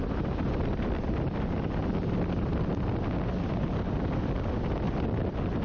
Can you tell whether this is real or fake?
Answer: real